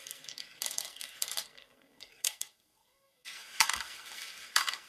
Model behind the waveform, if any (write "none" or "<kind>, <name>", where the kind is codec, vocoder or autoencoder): codec, SNAC